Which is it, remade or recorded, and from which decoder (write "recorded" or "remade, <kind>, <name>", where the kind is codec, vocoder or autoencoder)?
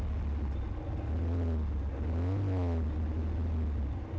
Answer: recorded